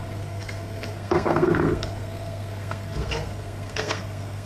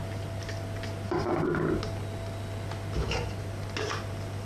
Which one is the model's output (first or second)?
first